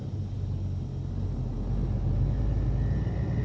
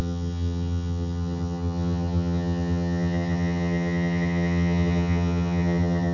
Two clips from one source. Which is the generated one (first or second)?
second